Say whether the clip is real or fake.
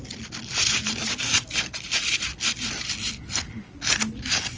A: real